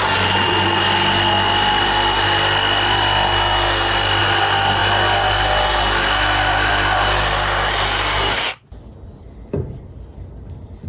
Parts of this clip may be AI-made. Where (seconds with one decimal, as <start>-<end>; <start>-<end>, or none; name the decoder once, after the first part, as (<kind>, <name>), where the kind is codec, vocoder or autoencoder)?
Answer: none

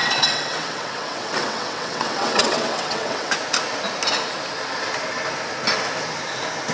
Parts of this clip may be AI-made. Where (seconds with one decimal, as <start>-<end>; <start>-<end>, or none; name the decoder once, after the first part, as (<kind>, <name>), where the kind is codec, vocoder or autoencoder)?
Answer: 0.0-3.3 (vocoder, WaveNeXt)

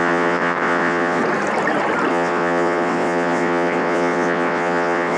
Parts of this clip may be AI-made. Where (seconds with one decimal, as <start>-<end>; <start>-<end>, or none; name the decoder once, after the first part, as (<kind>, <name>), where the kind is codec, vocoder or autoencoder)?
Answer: 0.0-1.2 (vocoder, WaveNeXt); 2.1-5.2

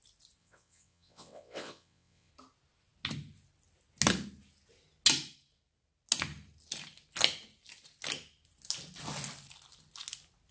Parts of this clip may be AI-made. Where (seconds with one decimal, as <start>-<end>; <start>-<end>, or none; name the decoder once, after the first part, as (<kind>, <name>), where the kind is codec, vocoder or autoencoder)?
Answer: 0.4-2.3 (vocoder, WaveNeXt)

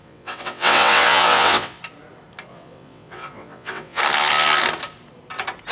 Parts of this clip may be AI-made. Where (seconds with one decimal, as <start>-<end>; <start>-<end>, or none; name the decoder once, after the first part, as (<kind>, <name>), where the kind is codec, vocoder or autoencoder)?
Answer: 0.0-1.8 (vocoder, WaveNeXt); 2.5-4.0

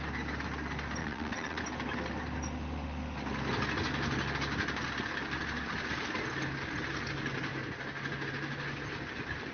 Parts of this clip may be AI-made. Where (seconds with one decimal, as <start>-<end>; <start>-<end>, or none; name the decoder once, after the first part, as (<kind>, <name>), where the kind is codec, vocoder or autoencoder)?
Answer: 1.0-1.6 (vocoder, WaveNeXt)

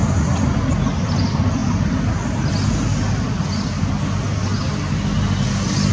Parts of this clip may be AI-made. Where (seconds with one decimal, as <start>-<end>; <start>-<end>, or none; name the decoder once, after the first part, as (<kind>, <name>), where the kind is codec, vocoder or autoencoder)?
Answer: none

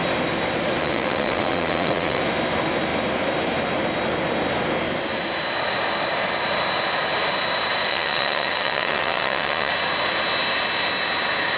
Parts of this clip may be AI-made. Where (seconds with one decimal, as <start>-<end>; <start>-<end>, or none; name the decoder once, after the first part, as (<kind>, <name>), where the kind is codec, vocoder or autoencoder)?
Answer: 0.8-2.2 (vocoder, WaveNeXt); 7.9-9.7